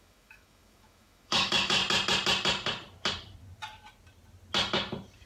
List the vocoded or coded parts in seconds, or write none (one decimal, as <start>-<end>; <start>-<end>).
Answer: 0.0-1.8